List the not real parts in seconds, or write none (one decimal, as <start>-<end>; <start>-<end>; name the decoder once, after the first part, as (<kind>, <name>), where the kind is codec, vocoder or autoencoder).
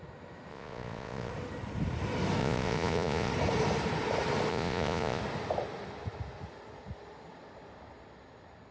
0.5-1.3 (vocoder, Vocos); 2.4-3.3; 4.5-5.2